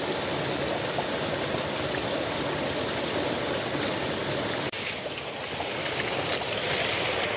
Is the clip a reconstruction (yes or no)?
no